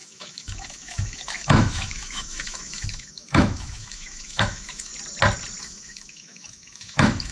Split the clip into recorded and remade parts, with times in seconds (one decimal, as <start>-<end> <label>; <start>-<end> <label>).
0.0-4.9 remade; 4.9-5.6 recorded; 5.6-7.3 remade